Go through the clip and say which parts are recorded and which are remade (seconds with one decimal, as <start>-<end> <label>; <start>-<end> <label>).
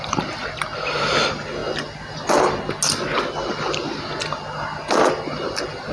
0.0-5.9 recorded